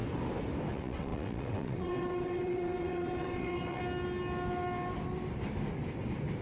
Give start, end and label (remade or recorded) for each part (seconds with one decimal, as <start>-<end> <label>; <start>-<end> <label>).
0.0-0.7 recorded; 0.7-3.8 remade; 3.8-6.4 recorded